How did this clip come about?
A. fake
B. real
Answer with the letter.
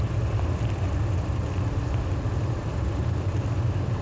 B